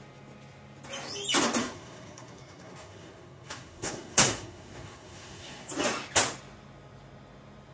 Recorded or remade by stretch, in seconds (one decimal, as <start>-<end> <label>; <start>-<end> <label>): 0.0-1.6 recorded; 1.6-5.7 remade; 5.7-7.7 recorded